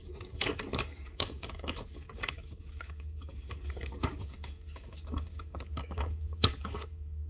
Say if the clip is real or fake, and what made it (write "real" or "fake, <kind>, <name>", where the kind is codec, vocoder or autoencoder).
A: fake, codec, DAC